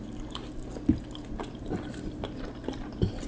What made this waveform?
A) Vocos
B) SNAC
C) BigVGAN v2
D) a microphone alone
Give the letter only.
D